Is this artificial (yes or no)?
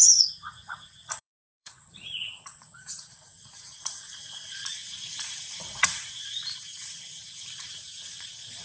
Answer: yes